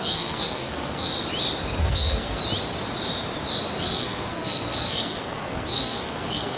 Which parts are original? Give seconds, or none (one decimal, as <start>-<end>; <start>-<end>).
1.1-1.8; 2.4-3.8